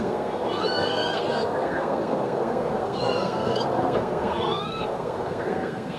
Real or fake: fake